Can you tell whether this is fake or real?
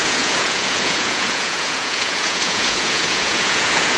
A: fake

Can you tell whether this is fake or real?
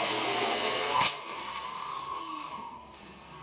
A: fake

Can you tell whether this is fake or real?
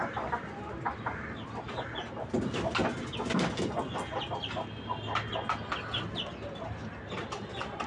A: real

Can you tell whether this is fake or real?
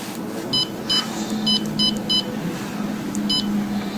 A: real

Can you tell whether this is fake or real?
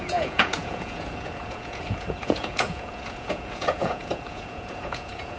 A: fake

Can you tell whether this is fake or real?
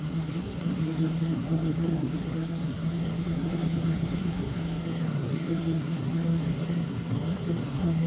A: fake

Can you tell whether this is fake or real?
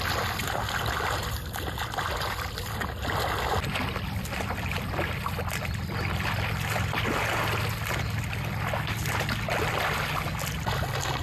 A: real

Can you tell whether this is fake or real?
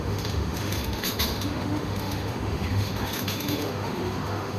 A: fake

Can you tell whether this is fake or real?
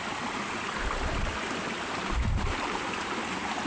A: real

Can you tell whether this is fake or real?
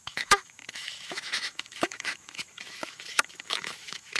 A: fake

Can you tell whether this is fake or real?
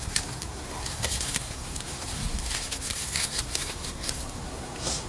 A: fake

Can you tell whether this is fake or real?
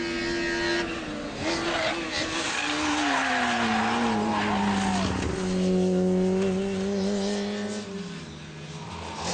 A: real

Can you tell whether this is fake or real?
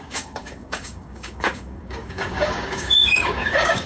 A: fake